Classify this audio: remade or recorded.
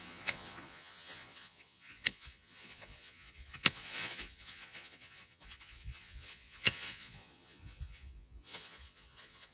remade